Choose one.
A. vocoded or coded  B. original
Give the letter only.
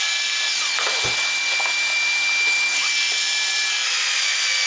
B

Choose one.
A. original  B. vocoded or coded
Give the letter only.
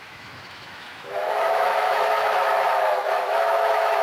B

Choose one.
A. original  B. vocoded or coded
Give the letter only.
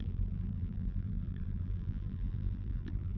B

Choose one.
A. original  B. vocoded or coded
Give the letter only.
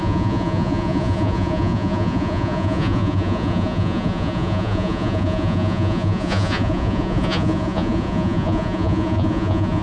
B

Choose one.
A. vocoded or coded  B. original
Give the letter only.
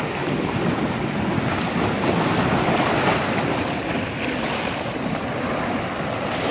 B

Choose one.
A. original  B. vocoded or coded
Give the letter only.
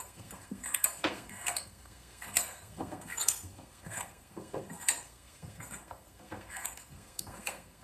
B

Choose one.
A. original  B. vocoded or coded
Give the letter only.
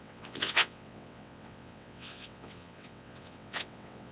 B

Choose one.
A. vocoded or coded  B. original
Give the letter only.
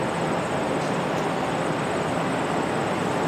B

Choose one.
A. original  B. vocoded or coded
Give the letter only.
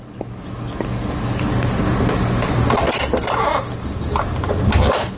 A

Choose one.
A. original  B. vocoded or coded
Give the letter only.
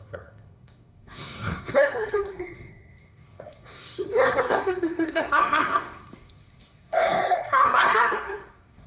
B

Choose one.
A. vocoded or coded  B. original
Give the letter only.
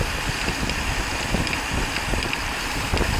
B